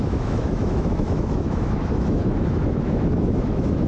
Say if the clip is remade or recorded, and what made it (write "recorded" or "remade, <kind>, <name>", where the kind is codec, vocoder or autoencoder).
remade, autoencoder, DAC-VAE